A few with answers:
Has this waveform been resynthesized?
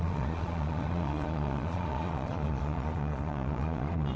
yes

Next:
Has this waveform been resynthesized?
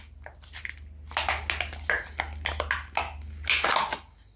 no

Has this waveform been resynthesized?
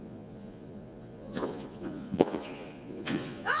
yes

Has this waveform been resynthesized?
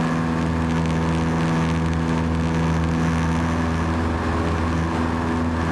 no